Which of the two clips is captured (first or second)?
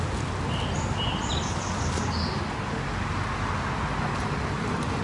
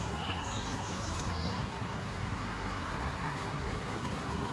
first